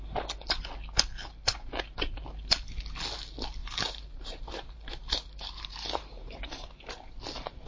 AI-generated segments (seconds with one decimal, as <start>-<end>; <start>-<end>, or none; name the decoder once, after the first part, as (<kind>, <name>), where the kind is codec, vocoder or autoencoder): 3.6-6.7 (vocoder, BigVGAN v2)